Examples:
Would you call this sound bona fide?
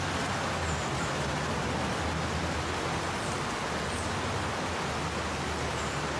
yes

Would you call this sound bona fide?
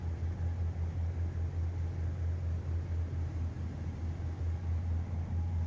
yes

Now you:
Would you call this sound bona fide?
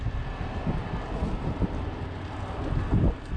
yes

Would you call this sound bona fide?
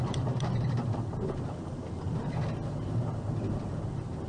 yes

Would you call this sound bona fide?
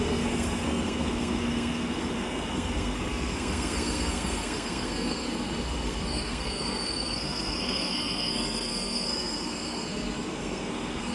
no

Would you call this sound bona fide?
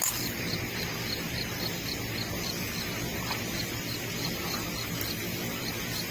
yes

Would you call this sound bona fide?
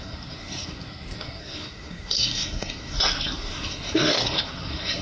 no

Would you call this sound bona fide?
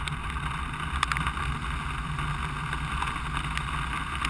yes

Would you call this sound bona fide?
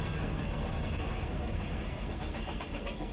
no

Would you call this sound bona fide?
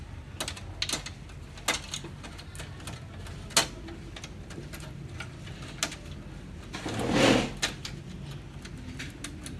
yes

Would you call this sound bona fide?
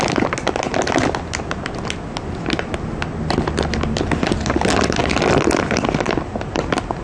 yes